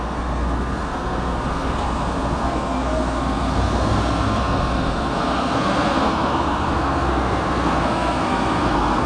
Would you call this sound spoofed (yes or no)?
yes